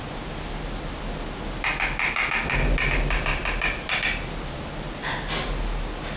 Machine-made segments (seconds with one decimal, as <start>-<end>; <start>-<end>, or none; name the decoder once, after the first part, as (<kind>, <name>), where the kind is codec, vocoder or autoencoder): none